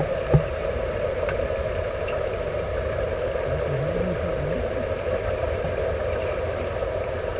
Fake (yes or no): no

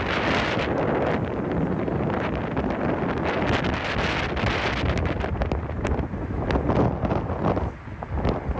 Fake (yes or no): no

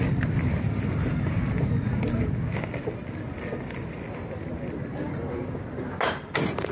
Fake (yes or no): no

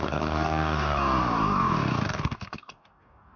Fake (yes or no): yes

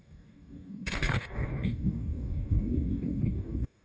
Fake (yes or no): yes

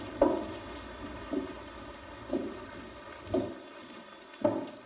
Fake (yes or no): no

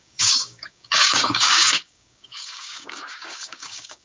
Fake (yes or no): yes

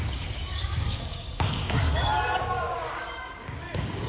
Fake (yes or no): yes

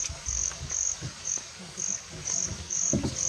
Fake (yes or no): yes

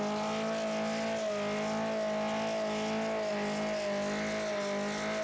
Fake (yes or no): no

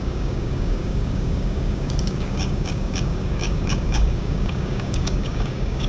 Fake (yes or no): yes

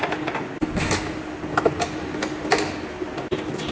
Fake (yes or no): no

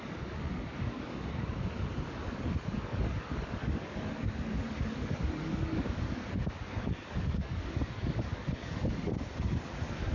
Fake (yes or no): yes